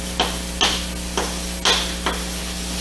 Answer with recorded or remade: recorded